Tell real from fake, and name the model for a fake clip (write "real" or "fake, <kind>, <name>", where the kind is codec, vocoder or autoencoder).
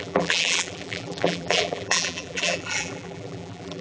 fake, vocoder, BigVGAN v2